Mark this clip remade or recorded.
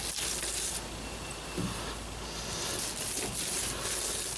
recorded